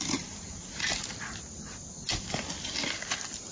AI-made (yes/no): no